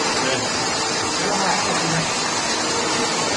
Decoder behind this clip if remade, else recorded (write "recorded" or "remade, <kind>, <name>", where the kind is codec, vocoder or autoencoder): recorded